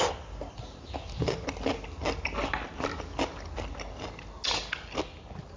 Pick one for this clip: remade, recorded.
recorded